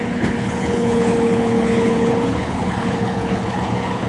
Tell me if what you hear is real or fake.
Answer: fake